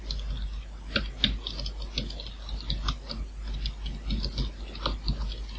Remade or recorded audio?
recorded